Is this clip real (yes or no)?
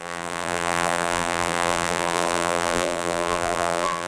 no